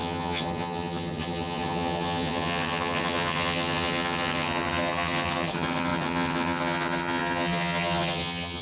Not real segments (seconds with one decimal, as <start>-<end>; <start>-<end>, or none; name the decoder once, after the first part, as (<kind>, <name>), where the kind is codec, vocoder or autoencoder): 0.0-8.6 (vocoder, HiFi-GAN)